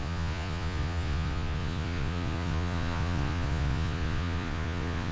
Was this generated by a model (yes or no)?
yes